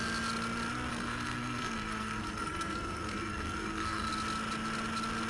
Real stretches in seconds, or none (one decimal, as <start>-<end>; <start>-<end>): 0.0-0.9; 4.1-5.3